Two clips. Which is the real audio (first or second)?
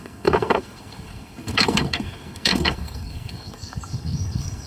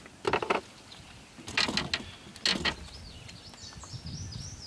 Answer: second